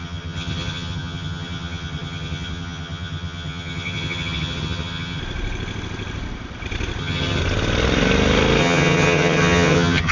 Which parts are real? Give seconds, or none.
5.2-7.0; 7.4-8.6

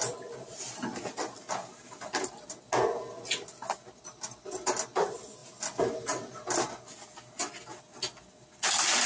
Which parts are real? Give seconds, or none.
0.0-9.1

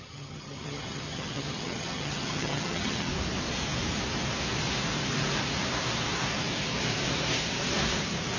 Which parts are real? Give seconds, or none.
3.1-8.4

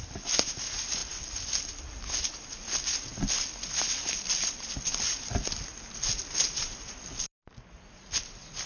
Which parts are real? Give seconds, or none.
0.0-8.7

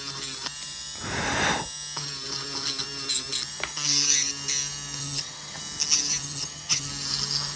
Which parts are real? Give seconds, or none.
0.0-5.0; 5.6-6.2; 6.9-7.6